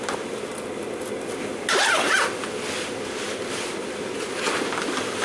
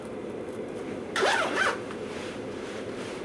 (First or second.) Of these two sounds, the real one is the first